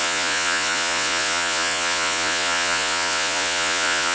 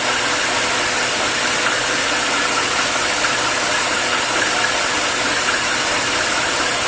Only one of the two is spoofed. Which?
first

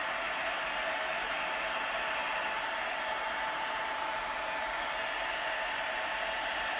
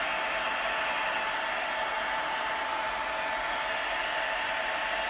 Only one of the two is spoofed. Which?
first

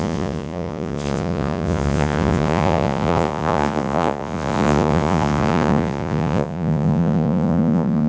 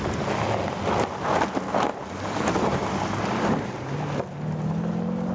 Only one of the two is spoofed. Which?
first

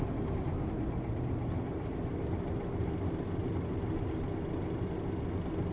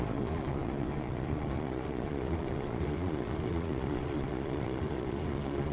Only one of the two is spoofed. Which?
second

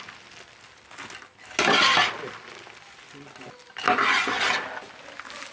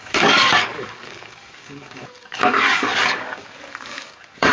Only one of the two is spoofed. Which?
second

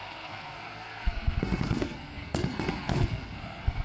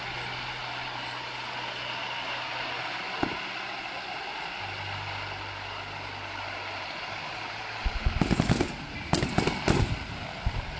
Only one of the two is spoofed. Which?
first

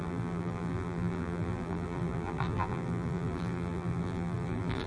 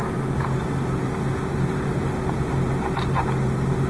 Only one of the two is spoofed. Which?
first